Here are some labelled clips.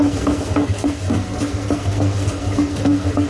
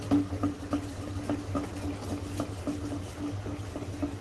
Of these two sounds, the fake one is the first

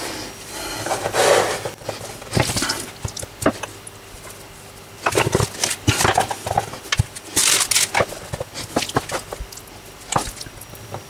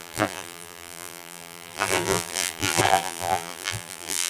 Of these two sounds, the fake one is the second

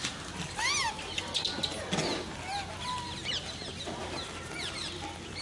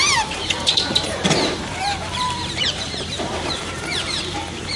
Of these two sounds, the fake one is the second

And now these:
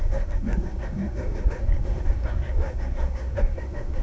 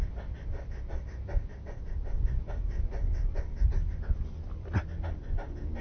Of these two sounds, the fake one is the first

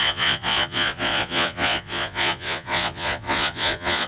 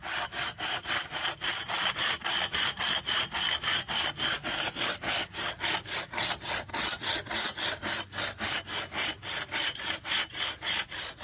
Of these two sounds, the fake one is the first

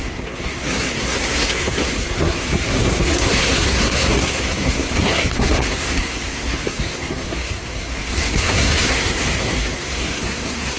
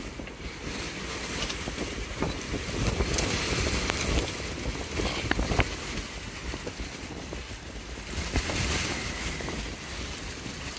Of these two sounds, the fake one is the first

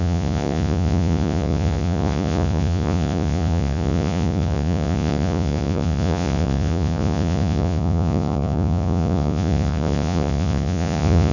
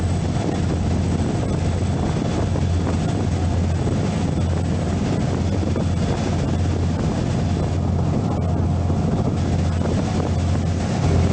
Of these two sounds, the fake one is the first